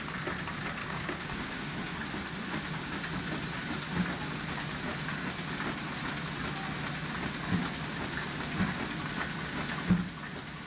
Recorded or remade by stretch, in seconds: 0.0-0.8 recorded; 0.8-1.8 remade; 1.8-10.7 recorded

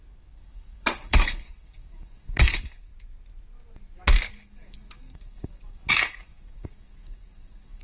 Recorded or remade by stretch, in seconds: 0.0-2.9 remade; 2.9-4.5 recorded; 4.5-7.8 remade

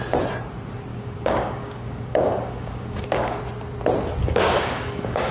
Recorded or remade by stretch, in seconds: 0.0-0.9 recorded; 0.9-3.4 remade; 3.4-4.2 recorded; 4.2-5.3 remade